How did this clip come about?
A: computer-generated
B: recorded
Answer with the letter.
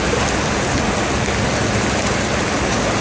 B